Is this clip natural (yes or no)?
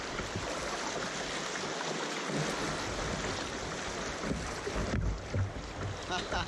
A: yes